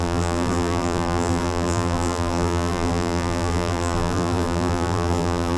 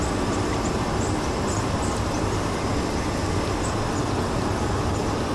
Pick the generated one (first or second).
first